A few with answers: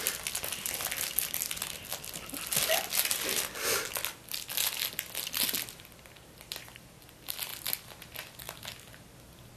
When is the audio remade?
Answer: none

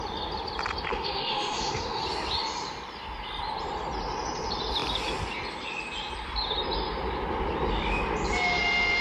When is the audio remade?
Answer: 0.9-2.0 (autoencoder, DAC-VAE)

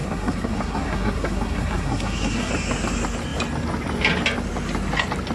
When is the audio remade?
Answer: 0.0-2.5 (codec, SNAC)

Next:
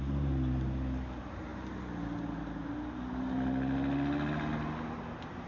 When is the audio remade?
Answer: none

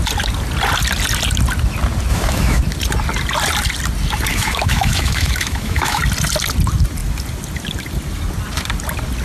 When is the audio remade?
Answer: 2.1-2.6 (autoencoder, DAC-VAE); 4.3-6.0

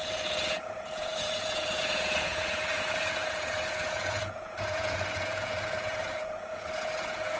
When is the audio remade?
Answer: 0.0-7.4 (vocoder, Vocos)

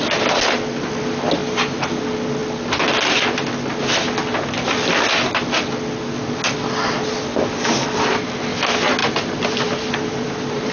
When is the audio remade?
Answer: 1.4-2.0 (vocoder, BigVGAN v2); 9.0-10.7